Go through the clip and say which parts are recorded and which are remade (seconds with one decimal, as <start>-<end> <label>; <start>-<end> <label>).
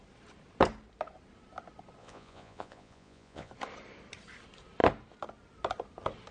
0.0-2.0 recorded; 2.0-3.5 remade; 3.5-6.3 recorded